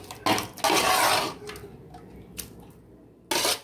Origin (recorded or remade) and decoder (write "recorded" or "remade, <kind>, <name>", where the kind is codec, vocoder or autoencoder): recorded